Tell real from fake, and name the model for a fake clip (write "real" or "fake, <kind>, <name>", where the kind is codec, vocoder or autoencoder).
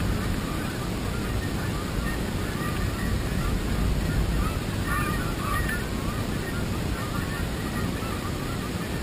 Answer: real